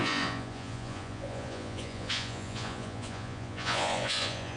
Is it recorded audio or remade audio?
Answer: remade